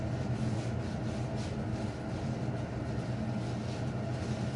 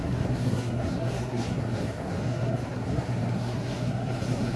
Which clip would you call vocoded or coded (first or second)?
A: second